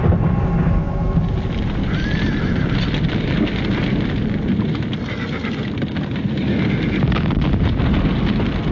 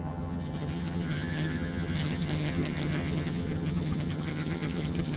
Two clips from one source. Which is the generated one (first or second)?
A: second